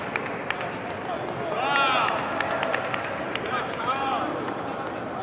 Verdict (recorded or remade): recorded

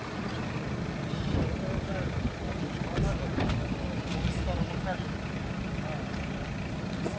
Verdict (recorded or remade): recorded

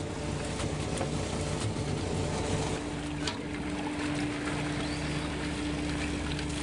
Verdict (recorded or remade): recorded